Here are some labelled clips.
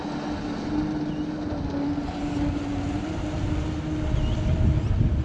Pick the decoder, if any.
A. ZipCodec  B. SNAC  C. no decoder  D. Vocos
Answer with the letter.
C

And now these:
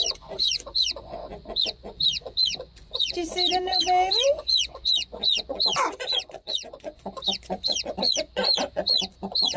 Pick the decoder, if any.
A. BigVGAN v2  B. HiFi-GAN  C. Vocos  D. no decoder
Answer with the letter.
C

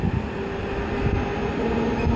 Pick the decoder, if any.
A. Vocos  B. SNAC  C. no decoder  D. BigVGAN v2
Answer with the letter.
C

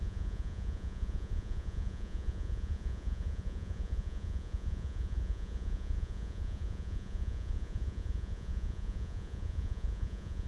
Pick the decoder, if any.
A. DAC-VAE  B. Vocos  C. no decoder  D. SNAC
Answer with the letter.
B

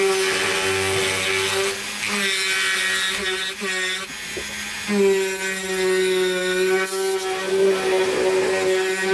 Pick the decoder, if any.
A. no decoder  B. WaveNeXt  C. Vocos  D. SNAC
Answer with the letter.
A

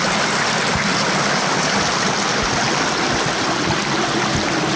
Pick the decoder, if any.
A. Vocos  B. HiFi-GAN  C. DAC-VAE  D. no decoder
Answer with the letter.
D